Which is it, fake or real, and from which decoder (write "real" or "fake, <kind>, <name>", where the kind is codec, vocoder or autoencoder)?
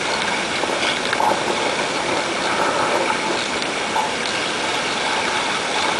real